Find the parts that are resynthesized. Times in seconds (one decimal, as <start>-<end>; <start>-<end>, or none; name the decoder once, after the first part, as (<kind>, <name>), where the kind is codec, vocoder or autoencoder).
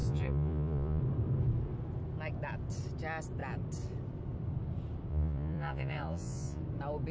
0.0-1.0 (vocoder, Vocos); 5.1-6.6